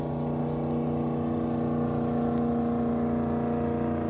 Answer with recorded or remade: recorded